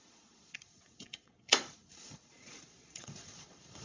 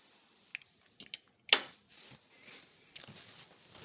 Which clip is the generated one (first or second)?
first